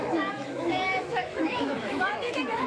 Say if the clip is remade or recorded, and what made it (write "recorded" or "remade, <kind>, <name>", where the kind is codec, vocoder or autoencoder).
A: remade, autoencoder, DAC-VAE